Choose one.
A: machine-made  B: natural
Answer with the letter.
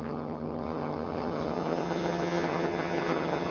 A